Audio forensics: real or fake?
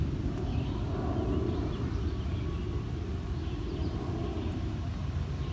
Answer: real